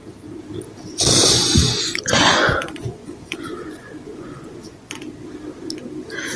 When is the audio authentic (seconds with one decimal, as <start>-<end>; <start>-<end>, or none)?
0.0-1.2; 4.9-6.4